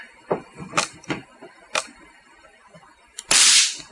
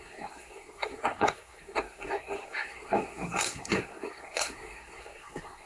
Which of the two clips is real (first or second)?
first